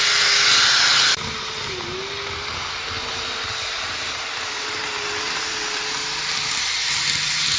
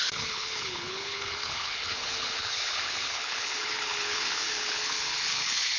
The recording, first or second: first